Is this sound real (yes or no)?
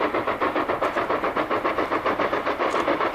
no